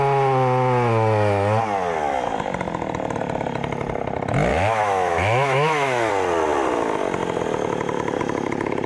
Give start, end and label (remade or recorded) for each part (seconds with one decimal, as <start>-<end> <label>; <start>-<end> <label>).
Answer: 0.0-4.5 recorded; 4.5-6.1 remade; 6.1-8.9 recorded